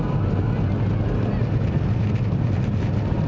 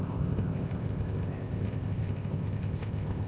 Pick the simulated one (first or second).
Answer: second